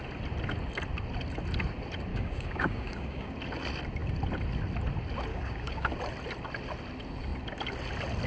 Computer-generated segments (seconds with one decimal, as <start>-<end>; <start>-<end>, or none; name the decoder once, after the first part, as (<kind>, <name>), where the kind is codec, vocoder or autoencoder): 2.1-3.3 (codec, DAC); 5.3-5.9